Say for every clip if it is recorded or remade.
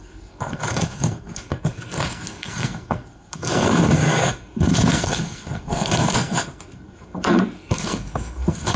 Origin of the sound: remade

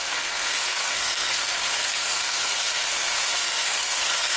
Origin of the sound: remade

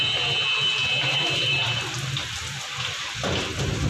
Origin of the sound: recorded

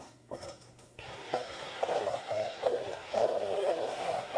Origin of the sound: remade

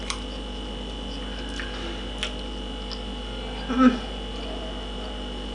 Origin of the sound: recorded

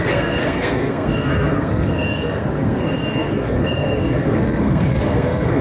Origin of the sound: remade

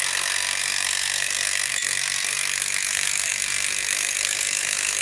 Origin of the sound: remade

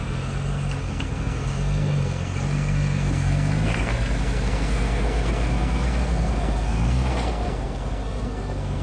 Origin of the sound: remade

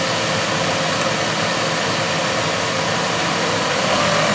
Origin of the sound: recorded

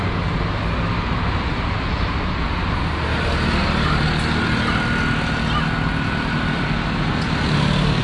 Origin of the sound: recorded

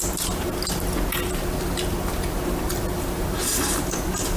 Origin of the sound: recorded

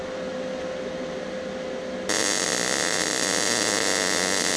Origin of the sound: recorded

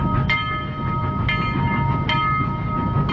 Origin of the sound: recorded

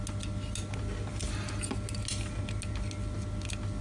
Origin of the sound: recorded